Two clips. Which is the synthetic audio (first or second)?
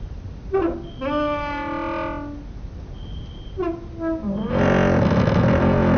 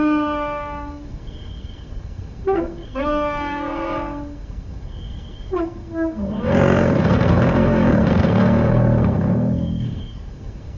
second